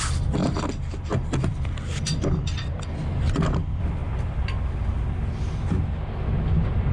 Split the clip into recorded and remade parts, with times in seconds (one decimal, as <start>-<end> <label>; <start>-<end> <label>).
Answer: 0.0-6.9 recorded